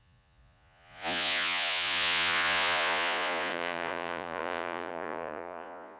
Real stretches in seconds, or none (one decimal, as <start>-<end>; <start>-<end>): none